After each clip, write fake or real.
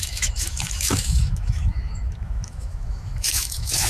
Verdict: fake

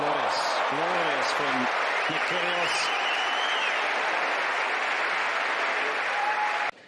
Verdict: real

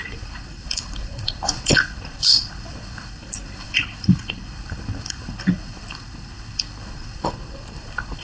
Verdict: fake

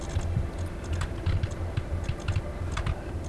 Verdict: real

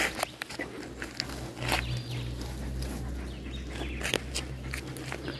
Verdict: real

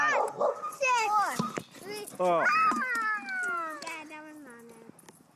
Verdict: real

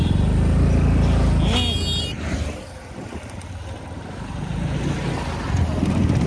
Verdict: real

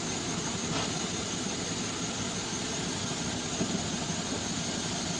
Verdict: real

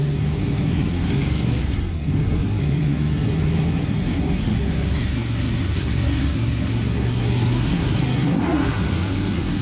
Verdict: fake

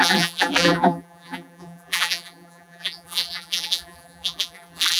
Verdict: fake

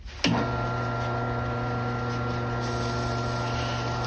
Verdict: real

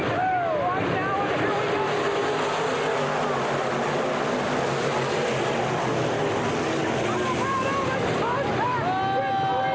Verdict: real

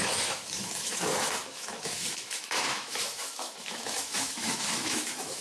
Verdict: fake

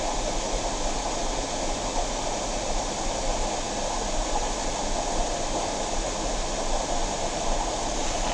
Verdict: real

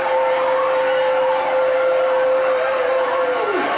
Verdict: real